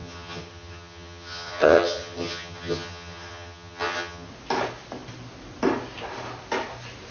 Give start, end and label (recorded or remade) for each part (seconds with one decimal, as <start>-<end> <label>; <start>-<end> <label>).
0.0-4.3 remade; 4.3-7.1 recorded